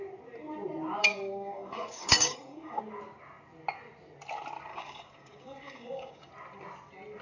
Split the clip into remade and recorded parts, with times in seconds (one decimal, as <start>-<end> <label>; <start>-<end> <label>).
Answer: 0.0-1.0 recorded; 1.0-2.8 remade; 2.8-4.7 recorded; 4.7-6.3 remade; 6.3-7.2 recorded